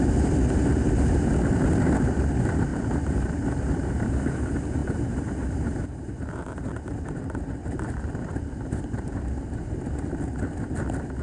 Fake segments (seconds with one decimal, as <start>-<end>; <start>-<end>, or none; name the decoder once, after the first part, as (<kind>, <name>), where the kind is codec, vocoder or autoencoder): 2.7-4.1 (vocoder, BigVGAN v2); 4.8-9.8